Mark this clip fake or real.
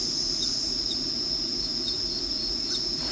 fake